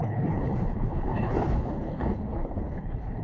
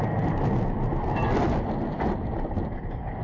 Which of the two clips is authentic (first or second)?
second